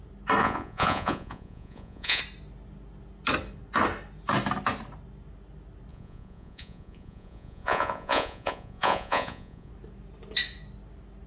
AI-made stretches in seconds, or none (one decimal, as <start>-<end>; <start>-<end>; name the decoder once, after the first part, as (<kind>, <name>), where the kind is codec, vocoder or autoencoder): 0.4-2.2 (vocoder, Vocos); 5.9-9.7